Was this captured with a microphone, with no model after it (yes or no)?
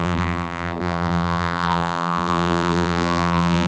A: no